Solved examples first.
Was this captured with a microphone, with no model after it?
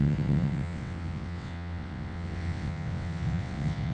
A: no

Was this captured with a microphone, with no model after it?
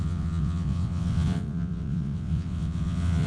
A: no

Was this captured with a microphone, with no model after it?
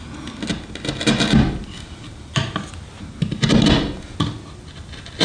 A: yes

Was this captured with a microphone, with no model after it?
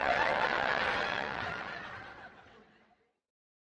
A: no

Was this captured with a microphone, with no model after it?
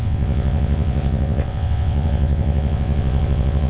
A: no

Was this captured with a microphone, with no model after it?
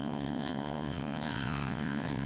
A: no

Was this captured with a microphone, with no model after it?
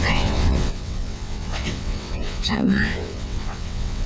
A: no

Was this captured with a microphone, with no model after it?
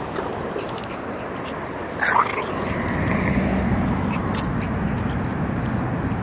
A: yes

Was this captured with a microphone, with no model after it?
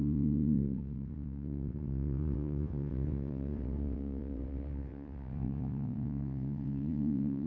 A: no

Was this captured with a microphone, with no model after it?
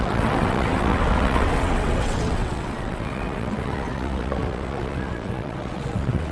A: no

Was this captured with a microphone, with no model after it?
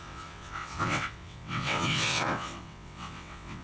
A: no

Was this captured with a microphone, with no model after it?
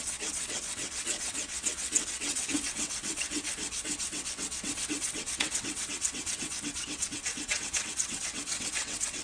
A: no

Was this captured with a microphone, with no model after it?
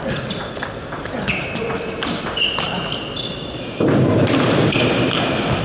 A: yes